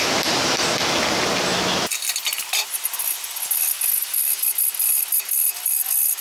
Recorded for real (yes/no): yes